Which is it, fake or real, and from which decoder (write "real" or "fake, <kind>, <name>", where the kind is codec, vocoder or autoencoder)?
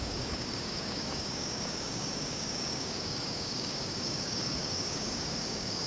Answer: fake, codec, DAC